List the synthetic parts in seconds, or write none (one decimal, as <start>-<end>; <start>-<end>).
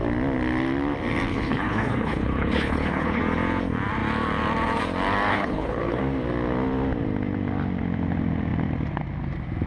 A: 1.3-3.2; 5.3-6.0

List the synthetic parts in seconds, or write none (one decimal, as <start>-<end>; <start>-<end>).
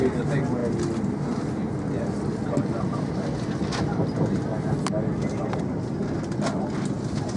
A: none